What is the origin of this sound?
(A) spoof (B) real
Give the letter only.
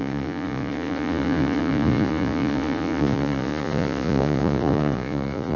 A